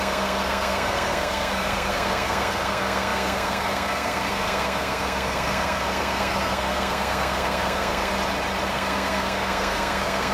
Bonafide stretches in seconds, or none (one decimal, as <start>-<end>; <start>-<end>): 8.1-8.7